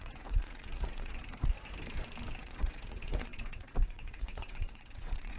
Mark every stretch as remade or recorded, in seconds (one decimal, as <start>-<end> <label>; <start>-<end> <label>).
0.0-1.2 remade; 1.2-2.4 recorded; 2.4-5.4 remade